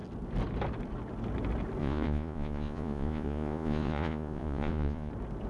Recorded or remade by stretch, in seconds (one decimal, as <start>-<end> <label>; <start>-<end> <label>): 0.0-1.8 recorded; 1.8-5.1 remade; 5.1-5.5 recorded